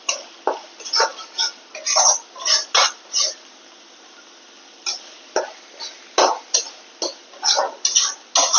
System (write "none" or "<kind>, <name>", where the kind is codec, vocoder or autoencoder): none